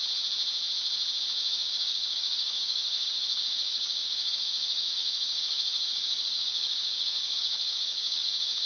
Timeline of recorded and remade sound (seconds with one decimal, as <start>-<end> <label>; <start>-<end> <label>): 0.0-1.5 recorded; 1.5-8.7 remade